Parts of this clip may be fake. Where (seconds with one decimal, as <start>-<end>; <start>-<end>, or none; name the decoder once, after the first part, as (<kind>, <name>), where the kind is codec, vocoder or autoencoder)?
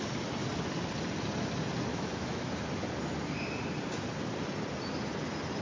1.9-2.5 (autoencoder, DAC-VAE)